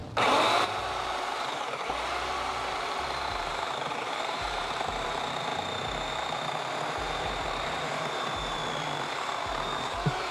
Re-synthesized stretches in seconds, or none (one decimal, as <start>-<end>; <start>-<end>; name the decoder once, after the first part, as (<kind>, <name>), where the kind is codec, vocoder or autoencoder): 0.6-5.5 (vocoder, BigVGAN v2); 7.2-8.6; 9.1-10.3